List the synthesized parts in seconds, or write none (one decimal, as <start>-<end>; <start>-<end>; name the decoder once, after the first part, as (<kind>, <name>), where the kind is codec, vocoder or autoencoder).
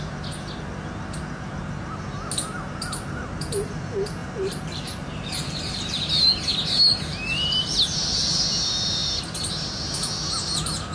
4.2-6.0 (vocoder, BigVGAN v2); 8.0-8.5; 9.0-9.5